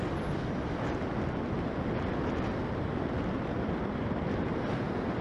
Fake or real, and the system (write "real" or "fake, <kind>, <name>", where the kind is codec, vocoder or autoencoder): real